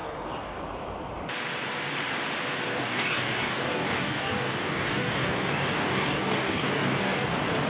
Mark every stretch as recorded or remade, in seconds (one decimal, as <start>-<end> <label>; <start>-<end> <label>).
0.0-0.6 remade; 0.6-2.7 recorded; 2.7-7.3 remade; 7.3-7.7 recorded